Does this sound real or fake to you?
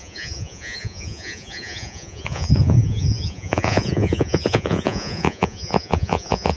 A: fake